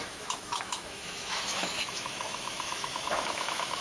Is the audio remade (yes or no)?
yes